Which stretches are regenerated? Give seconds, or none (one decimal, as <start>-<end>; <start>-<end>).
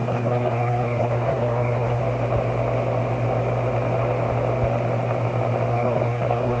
0.0-2.0; 5.7-6.6